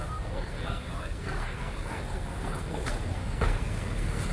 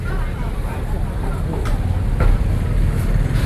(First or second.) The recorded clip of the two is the second